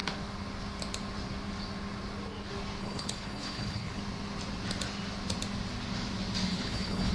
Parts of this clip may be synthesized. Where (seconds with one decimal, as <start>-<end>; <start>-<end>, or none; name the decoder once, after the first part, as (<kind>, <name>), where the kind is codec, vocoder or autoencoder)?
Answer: 2.8-4.0 (codec, HILCodec); 6.5-7.1